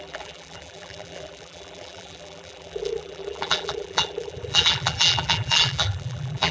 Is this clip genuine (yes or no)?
no